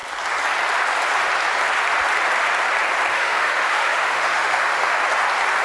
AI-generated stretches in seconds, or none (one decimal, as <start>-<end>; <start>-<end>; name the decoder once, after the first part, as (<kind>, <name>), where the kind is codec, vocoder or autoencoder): 3.1-5.0 (autoencoder, DAC-VAE)